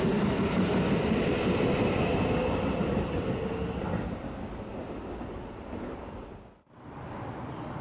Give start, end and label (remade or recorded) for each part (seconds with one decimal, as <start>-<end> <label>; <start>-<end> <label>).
0.0-7.8 recorded